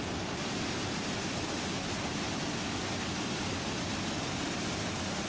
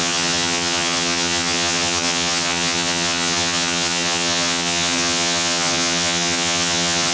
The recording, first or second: first